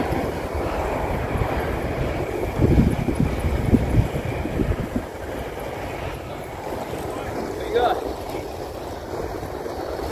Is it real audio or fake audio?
real